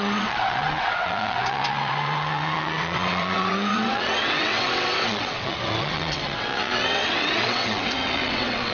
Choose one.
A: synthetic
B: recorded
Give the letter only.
A